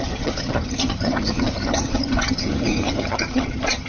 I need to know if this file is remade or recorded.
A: remade